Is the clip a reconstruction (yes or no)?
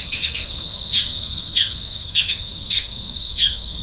yes